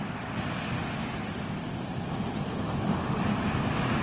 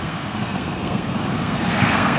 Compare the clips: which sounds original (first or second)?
first